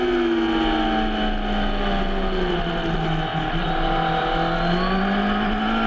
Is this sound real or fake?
real